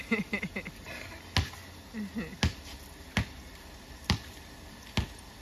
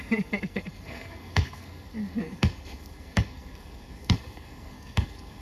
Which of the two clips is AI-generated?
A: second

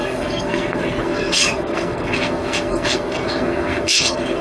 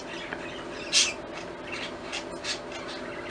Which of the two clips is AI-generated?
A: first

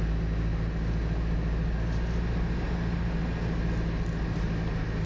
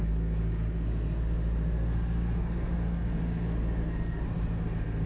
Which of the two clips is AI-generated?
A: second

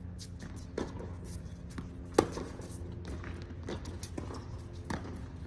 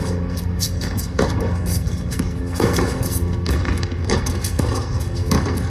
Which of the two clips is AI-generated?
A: second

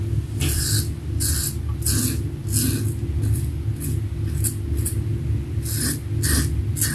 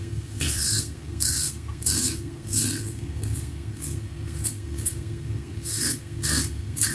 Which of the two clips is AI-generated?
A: second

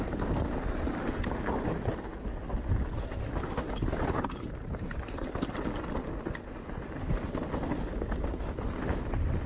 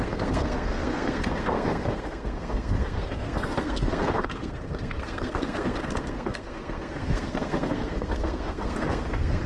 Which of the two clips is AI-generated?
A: second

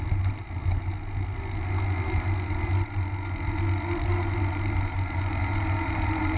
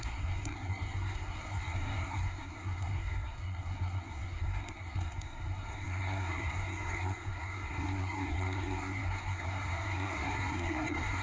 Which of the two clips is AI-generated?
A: second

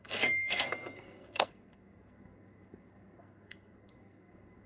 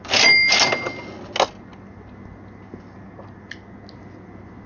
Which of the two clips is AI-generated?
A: first